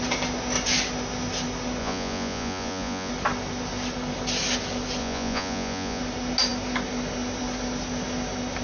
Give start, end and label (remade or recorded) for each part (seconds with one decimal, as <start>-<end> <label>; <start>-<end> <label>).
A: 0.0-1.8 recorded; 1.8-3.1 remade; 3.1-5.0 recorded; 5.0-6.0 remade; 6.0-8.6 recorded